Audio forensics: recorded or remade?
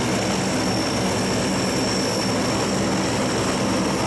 recorded